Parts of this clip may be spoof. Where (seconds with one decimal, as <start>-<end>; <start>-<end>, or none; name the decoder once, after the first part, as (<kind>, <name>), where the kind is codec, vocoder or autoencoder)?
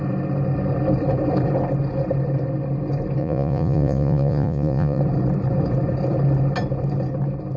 3.2-5.0 (vocoder, Vocos)